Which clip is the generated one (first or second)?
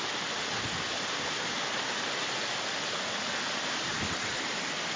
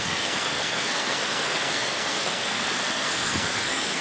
second